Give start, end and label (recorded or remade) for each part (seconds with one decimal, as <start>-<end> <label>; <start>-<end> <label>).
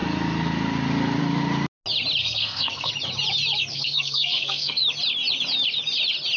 0.0-2.2 recorded; 2.2-2.9 remade; 2.9-3.7 recorded; 3.7-4.8 remade; 4.8-6.4 recorded